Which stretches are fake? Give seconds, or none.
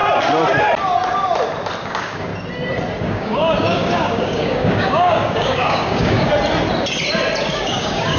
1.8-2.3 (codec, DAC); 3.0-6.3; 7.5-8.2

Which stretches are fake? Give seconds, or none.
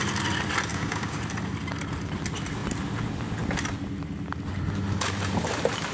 0.7-1.2 (codec, DAC)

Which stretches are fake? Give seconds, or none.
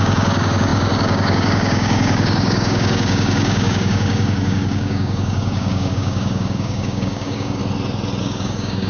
0.0-7.6 (codec, DAC); 8.2-8.9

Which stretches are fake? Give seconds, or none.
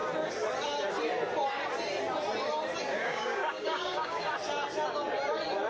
2.9-4.3 (codec, DAC)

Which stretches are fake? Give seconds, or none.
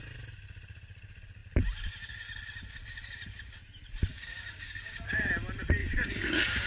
4.1-5.3 (codec, DAC); 5.8-6.7